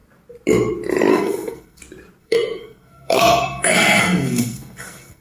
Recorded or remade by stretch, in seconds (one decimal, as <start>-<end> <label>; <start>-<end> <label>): 0.0-1.1 recorded; 1.1-1.8 remade; 1.8-2.2 recorded; 2.2-5.2 remade